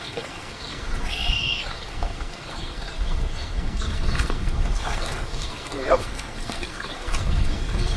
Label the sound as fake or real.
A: fake